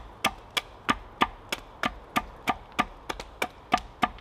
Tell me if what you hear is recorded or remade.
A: recorded